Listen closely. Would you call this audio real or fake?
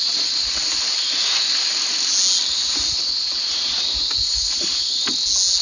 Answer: real